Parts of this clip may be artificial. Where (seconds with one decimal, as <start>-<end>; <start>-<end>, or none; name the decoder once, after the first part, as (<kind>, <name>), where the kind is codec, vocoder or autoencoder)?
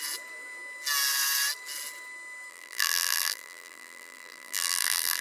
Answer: 2.5-5.2 (vocoder, BigVGAN v2)